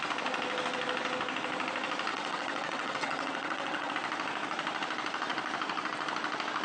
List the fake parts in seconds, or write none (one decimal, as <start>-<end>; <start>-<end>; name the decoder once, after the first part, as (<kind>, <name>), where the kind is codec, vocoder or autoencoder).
2.1-3.9 (vocoder, WaveNeXt)